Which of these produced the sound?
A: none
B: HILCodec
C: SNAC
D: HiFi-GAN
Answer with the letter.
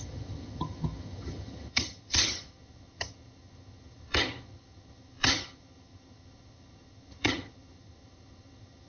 D